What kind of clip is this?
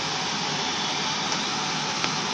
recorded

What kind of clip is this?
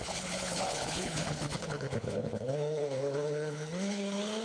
remade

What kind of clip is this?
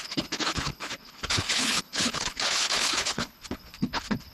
remade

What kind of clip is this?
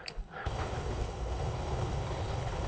remade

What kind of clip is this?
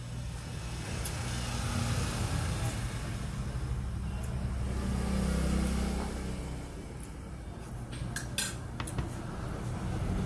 recorded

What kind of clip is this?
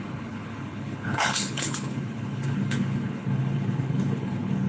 remade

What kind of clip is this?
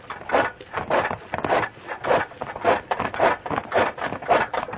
recorded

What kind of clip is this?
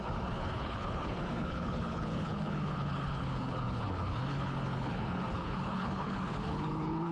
remade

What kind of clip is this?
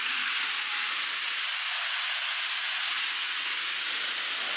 recorded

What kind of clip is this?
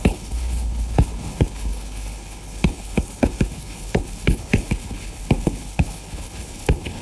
remade